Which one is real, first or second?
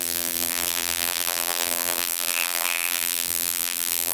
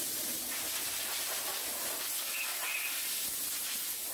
second